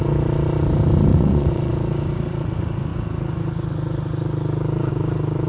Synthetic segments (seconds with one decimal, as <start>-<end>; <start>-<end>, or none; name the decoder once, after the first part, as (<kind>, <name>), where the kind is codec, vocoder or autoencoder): 1.1-1.7 (vocoder, Vocos)